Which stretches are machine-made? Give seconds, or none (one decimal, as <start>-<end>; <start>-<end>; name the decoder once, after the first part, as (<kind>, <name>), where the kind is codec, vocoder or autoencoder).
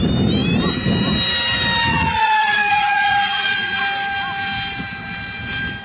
1.9-3.8 (vocoder, Vocos)